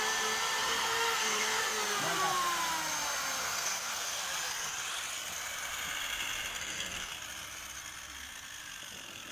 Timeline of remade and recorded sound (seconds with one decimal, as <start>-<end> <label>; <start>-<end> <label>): 0.0-0.6 recorded; 0.6-1.8 remade; 1.8-3.4 recorded; 3.4-4.2 remade; 4.2-6.5 recorded; 6.5-7.1 remade; 7.1-9.3 recorded